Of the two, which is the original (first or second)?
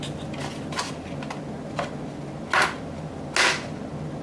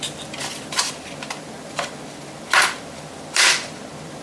first